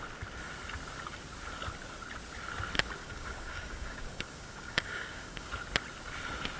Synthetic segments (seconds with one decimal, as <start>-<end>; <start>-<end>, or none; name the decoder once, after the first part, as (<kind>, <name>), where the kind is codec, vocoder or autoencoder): 3.0-5.5 (codec, DAC)